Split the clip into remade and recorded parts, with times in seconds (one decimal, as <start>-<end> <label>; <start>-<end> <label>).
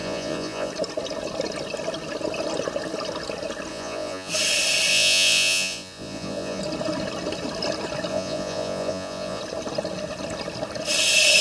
0.0-0.7 remade; 0.7-3.7 recorded; 3.7-4.3 remade; 4.3-4.9 recorded; 4.9-6.6 remade; 6.6-8.1 recorded; 8.1-9.4 remade; 9.4-11.4 recorded